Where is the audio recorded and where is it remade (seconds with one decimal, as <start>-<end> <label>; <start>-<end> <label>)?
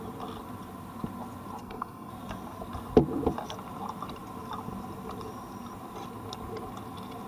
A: 0.0-1.6 recorded; 1.6-2.1 remade; 2.1-7.3 recorded